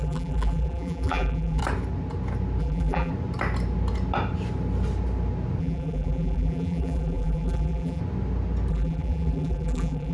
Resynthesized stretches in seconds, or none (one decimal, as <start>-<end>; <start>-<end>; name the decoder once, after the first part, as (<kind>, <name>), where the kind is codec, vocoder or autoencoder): 0.0-1.6 (vocoder, BigVGAN v2); 2.6-3.1; 5.6-8.0; 8.7-10.1

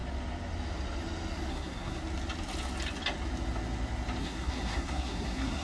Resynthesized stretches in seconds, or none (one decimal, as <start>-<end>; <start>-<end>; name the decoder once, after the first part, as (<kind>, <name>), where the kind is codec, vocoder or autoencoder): 1.5-2.0 (codec, SNAC); 4.2-5.6

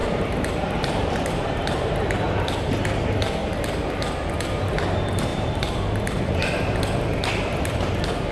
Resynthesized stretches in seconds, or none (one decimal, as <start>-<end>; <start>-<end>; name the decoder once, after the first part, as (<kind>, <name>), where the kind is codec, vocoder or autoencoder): 0.0-2.7 (vocoder, BigVGAN v2); 3.4-4.1; 5.3-6.4

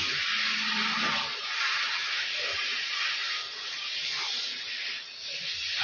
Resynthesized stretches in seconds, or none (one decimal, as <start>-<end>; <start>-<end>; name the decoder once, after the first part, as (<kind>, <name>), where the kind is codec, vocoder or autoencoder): 1.3-4.8 (vocoder, BigVGAN v2)

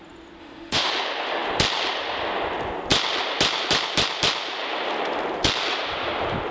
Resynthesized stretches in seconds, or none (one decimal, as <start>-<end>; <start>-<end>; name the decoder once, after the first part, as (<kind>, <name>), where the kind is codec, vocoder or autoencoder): 0.4-0.9 (autoencoder, DAC-VAE)

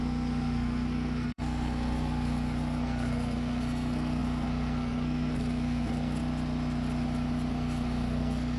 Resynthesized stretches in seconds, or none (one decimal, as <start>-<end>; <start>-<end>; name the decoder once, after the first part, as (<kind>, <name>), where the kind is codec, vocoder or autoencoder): 0.0-6.2 (codec, SNAC); 7.5-8.6

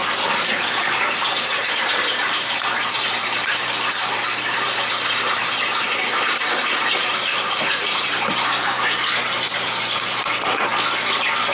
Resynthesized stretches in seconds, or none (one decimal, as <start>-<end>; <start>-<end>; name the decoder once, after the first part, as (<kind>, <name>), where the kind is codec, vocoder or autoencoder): 0.8-10.7 (vocoder, BigVGAN v2)

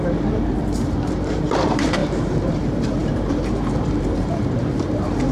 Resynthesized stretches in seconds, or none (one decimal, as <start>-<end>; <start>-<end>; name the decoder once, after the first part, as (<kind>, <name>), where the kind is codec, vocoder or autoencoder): 0.0-5.3 (vocoder, BigVGAN v2)